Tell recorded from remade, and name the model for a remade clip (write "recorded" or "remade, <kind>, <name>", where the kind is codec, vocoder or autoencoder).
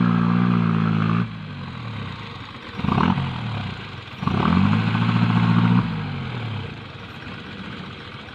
recorded